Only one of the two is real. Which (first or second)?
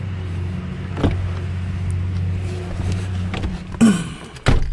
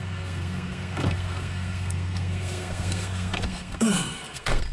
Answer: first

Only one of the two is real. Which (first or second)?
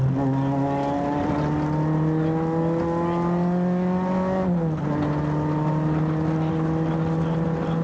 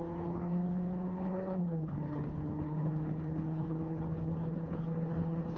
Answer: first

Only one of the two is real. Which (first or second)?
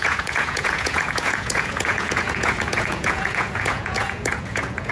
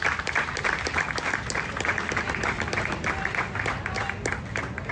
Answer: second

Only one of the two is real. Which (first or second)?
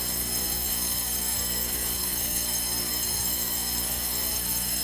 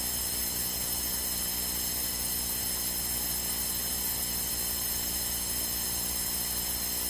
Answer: second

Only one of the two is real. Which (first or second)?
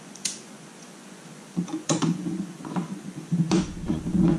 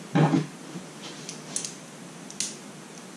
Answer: second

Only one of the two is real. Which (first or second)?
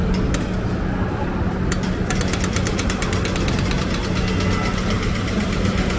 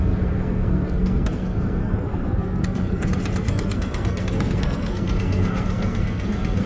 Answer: first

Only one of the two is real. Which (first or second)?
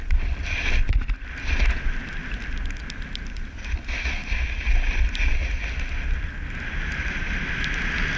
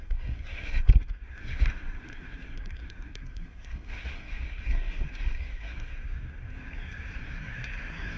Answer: first